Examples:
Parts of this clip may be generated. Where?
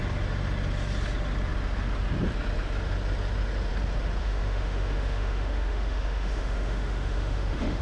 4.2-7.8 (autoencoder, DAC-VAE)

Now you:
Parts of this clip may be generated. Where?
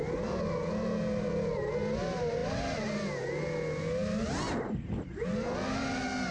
none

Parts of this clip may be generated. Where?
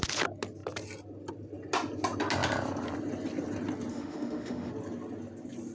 3.9-4.7 (autoencoder, DAC-VAE)